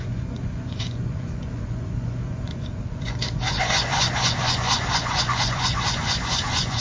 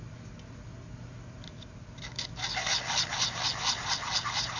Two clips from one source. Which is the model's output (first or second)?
first